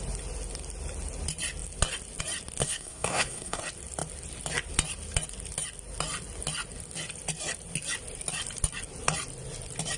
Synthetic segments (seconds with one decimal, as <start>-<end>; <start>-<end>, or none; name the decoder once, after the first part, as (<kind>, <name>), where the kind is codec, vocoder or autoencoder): 2.6-3.6 (codec, SNAC)